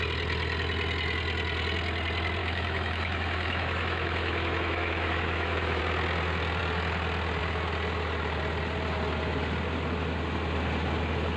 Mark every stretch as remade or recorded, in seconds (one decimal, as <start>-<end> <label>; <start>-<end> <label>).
0.0-2.4 recorded; 2.4-5.8 remade; 5.8-11.4 recorded